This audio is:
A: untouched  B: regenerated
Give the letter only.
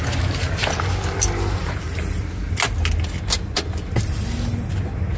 A